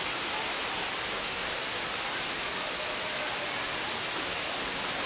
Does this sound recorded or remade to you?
recorded